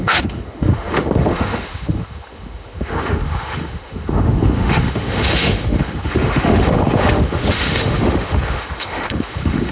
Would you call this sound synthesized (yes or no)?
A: yes